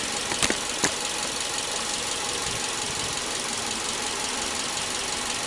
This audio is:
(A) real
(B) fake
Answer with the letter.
A